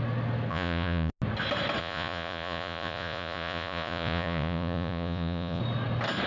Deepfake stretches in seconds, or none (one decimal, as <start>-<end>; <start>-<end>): 0.5-1.1; 1.8-5.6